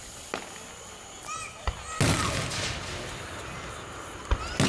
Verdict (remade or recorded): recorded